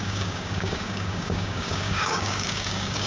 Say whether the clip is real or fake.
fake